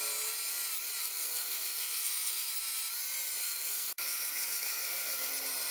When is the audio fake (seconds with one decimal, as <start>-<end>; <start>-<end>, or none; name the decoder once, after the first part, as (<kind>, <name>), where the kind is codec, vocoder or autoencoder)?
1.0-2.5 (codec, SNAC); 3.4-5.3